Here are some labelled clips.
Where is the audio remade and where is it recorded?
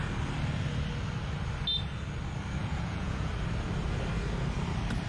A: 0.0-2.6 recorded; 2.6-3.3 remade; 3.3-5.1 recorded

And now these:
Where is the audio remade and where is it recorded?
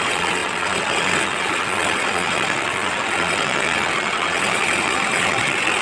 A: 0.0-5.8 remade